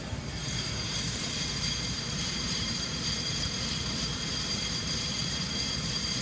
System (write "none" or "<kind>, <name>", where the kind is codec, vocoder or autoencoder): vocoder, BigVGAN v2